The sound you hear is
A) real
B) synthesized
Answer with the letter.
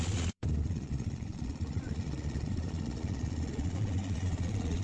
B